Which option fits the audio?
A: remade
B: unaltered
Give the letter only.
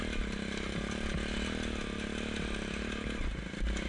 B